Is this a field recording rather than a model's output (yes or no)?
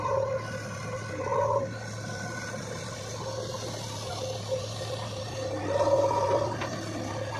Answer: yes